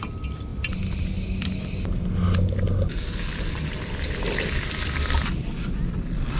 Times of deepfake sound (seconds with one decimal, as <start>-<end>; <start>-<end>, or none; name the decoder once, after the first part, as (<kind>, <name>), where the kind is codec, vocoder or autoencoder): none